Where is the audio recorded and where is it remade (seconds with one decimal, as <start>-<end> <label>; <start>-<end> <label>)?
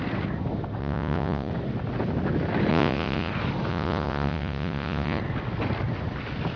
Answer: 0.0-0.8 recorded; 0.8-1.5 remade; 1.5-2.7 recorded; 2.7-3.3 remade; 3.3-3.7 recorded; 3.7-5.2 remade; 5.2-6.6 recorded